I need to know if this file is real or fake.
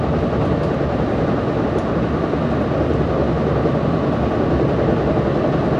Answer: real